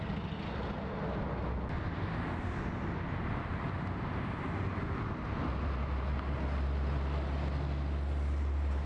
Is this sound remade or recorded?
recorded